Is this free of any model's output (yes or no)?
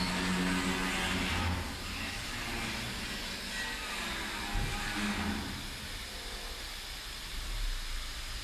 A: yes